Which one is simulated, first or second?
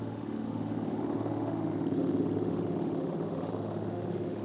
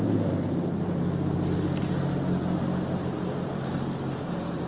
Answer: first